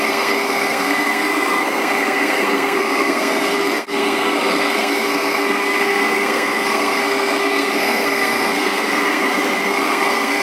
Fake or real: fake